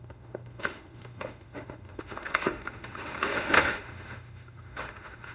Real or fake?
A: fake